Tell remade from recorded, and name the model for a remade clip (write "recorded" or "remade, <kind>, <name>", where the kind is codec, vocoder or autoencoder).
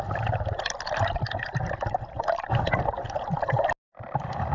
recorded